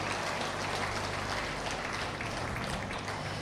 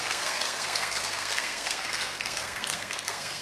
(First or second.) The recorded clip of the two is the first